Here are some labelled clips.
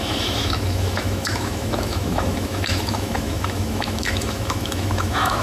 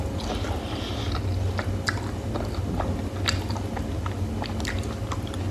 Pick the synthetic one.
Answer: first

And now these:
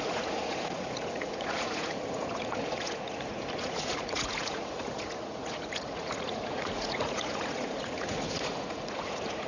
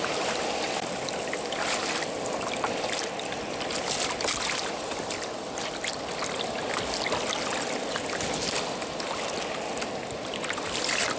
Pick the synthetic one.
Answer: first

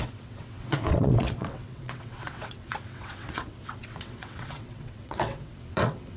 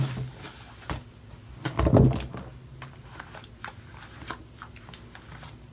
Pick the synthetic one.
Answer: first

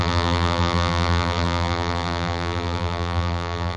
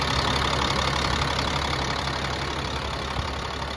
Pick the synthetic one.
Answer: first